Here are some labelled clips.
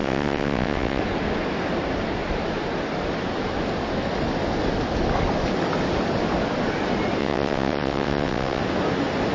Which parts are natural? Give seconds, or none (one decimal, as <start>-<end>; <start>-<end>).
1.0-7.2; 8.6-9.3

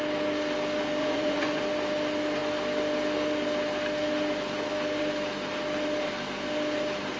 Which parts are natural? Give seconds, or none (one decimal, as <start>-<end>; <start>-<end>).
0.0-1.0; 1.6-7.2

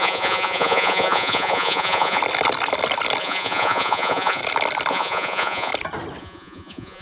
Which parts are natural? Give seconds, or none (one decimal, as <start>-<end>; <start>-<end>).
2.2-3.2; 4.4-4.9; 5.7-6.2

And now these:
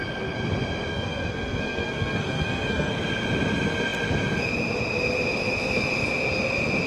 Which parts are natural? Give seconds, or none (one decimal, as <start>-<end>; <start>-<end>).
0.0-0.9; 2.9-6.9

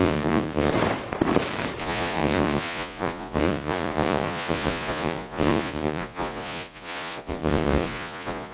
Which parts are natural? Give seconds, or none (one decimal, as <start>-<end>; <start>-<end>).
0.7-1.8

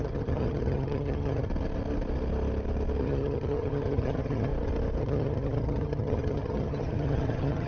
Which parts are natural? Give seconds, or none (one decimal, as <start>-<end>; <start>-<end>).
1.5-3.0; 4.5-5.0

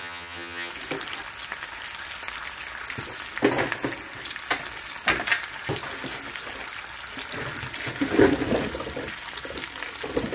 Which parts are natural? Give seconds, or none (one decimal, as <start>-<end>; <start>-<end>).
0.7-10.3

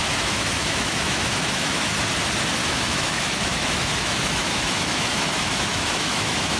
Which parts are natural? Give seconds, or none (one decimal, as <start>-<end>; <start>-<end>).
1.9-2.6